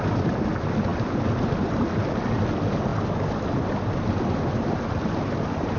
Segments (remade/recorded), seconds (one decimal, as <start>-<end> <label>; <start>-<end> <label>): 0.0-0.9 recorded; 0.9-2.0 remade; 2.0-5.8 recorded